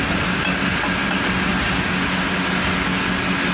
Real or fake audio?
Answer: real